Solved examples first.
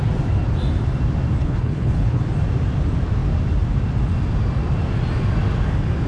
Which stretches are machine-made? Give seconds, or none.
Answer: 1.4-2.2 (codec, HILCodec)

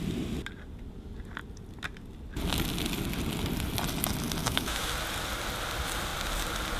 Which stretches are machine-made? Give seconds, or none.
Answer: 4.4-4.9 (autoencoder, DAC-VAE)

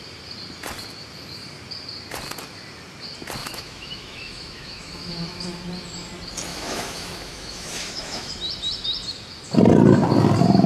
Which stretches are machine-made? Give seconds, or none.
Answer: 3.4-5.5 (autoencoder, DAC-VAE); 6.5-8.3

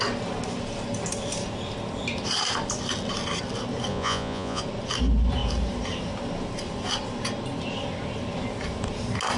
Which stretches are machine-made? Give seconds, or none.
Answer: 3.9-4.6 (vocoder, Vocos)

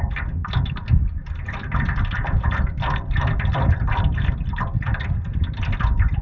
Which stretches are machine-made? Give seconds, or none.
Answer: none